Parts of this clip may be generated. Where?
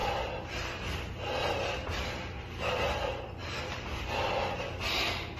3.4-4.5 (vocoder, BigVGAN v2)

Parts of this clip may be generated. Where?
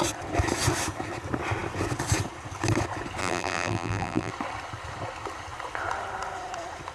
3.2-4.3 (vocoder, BigVGAN v2)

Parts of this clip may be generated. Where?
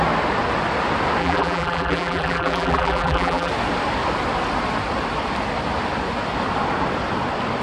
1.2-3.5 (vocoder, BigVGAN v2)